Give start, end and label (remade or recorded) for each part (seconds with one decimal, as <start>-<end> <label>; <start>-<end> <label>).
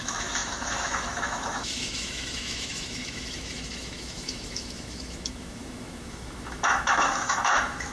0.0-7.9 remade